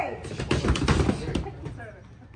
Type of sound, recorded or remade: recorded